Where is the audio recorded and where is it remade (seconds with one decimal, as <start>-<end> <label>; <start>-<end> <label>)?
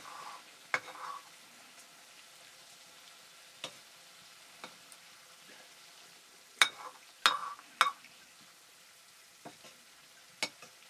0.0-10.9 recorded